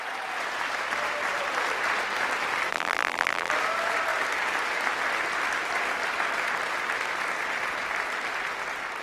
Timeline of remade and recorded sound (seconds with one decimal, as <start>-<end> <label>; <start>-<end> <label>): 0.0-2.7 recorded; 2.7-3.5 remade; 3.5-9.0 recorded